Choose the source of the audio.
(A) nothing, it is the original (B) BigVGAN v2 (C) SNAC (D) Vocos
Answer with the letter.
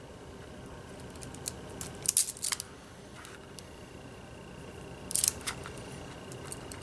A